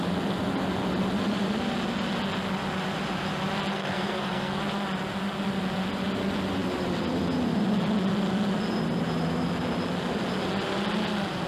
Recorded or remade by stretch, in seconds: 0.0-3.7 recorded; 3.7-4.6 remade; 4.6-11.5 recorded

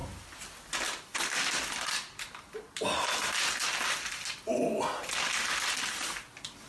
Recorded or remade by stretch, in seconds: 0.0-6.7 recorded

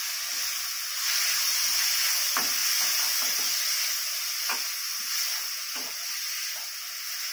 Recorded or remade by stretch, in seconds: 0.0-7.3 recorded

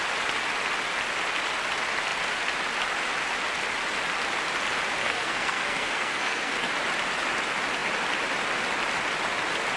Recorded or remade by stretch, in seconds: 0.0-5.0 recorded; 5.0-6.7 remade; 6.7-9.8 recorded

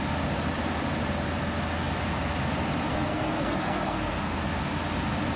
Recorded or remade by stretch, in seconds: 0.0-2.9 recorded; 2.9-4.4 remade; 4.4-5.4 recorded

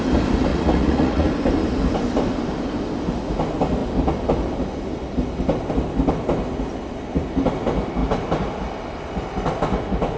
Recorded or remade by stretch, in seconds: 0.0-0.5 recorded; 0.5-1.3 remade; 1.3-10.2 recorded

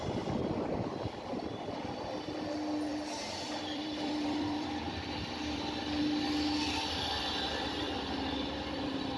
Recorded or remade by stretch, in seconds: 0.0-2.9 recorded; 2.9-6.0 remade; 6.0-9.2 recorded